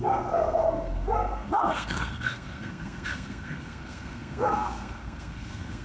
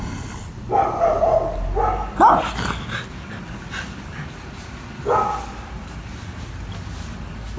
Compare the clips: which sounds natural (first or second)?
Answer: second